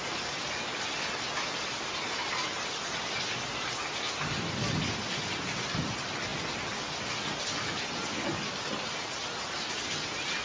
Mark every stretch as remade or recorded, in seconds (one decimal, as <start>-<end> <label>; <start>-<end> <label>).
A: 0.0-10.4 recorded